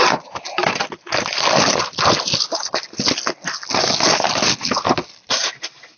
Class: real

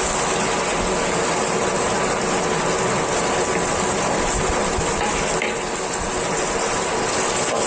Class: real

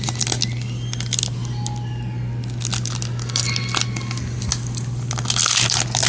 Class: real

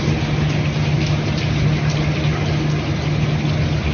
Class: real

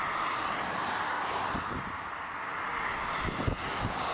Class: real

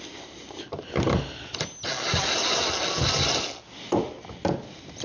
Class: real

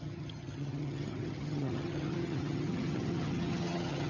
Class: fake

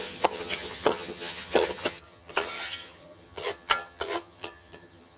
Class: fake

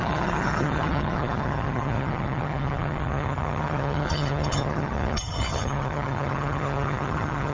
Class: fake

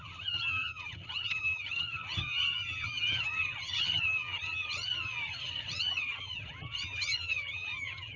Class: fake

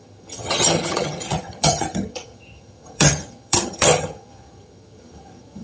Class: fake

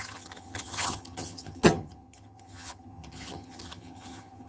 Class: fake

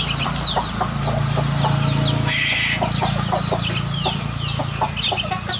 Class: real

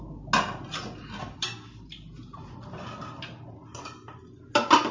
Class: real